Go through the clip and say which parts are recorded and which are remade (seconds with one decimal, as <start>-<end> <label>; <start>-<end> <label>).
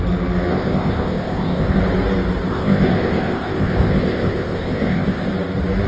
0.0-0.5 recorded; 0.5-1.8 remade; 1.8-2.5 recorded; 2.5-5.3 remade; 5.3-5.9 recorded